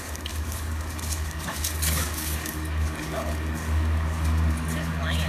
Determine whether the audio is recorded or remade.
remade